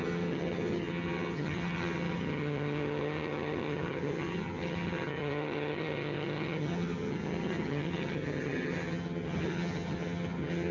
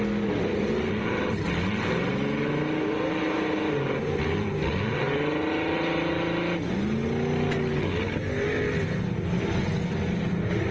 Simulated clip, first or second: first